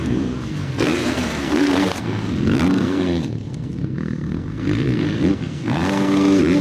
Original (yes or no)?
no